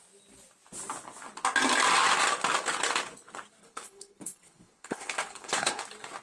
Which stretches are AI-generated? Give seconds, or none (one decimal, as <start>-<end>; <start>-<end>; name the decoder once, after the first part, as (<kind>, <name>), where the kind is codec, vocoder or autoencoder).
3.6-5.8 (codec, HILCodec)